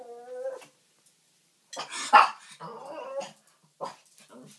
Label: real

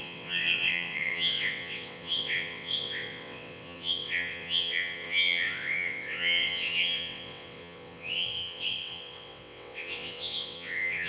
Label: fake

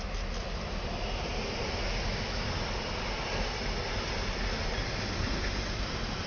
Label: real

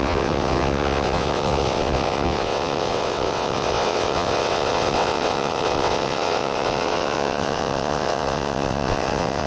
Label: fake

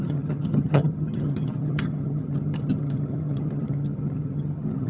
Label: fake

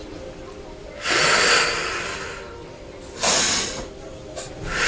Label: real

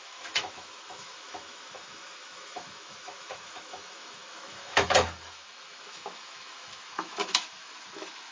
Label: fake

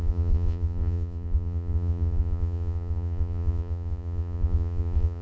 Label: fake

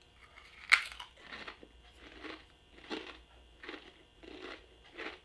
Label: real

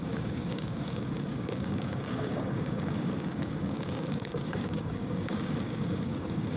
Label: fake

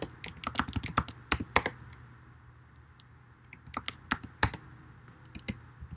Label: real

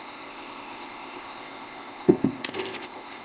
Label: fake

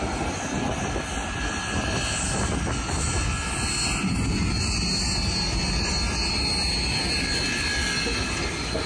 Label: real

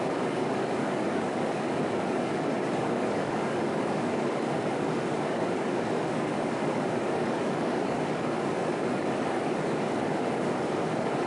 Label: fake